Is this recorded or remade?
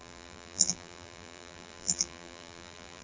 remade